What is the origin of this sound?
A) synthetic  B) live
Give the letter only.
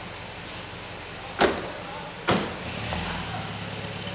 B